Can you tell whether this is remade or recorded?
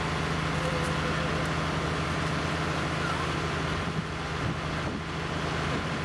recorded